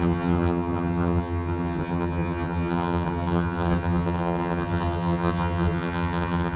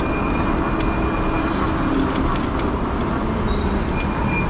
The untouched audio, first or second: second